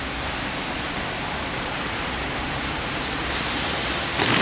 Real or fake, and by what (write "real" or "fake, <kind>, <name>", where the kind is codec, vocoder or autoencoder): fake, vocoder, BigVGAN v2